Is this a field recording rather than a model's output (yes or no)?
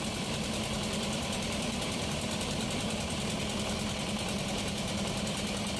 no